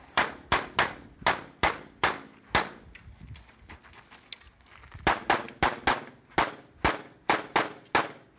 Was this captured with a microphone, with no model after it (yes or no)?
yes